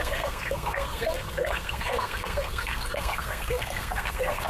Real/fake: fake